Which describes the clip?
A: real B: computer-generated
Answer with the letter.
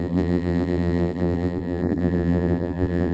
B